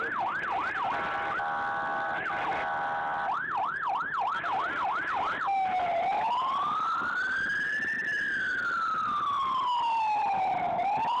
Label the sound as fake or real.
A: real